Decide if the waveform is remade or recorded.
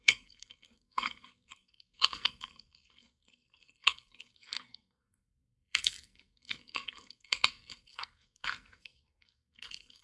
remade